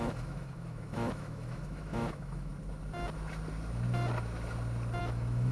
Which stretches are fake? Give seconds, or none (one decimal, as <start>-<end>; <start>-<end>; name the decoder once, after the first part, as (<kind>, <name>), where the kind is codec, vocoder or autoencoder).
0.0-2.5 (autoencoder, DAC-VAE); 5.0-5.5